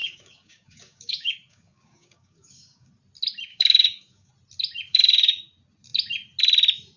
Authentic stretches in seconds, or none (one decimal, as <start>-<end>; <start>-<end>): 2.9-3.5; 4.3-4.9; 5.4-7.0